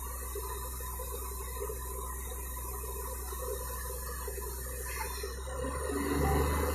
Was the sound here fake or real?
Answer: real